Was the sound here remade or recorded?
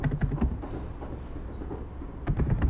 recorded